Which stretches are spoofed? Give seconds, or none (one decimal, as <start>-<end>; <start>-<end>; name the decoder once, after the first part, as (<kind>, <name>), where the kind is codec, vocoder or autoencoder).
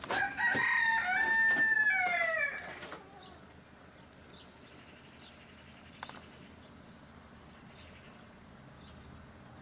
none